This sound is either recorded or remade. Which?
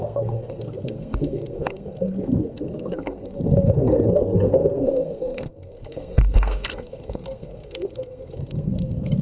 remade